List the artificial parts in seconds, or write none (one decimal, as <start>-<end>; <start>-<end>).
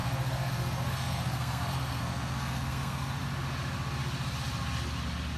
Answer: 0.0-3.2